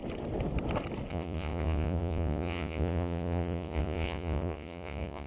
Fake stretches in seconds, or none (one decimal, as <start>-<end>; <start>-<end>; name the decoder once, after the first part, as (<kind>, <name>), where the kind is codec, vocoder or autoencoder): 1.1-5.3 (vocoder, Vocos)